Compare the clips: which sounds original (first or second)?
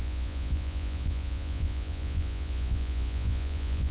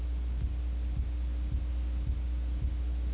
second